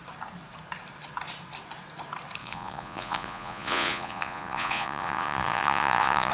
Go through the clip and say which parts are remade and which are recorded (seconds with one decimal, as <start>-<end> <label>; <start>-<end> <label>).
0.0-2.4 recorded; 2.4-6.3 remade